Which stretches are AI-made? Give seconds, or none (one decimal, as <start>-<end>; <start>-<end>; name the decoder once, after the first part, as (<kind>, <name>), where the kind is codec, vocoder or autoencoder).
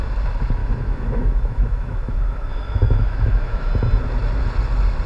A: 0.6-3.7 (autoencoder, DAC-VAE)